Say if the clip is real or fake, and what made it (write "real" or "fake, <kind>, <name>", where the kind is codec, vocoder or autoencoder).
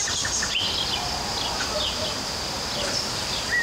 real